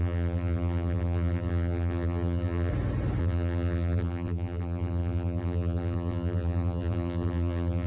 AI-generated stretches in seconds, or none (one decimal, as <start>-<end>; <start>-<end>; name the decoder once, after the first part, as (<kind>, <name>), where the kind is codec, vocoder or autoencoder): 0.0-2.7 (vocoder, BigVGAN v2); 3.2-7.9